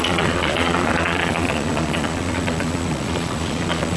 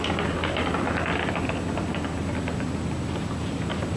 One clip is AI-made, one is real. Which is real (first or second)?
second